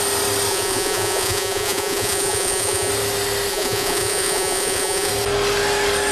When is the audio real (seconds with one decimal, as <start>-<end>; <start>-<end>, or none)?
0.0-0.5; 2.9-3.5; 5.1-6.1

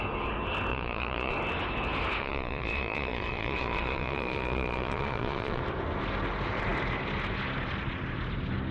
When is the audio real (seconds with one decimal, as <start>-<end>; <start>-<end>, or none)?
0.0-0.7; 1.3-2.2; 5.6-8.7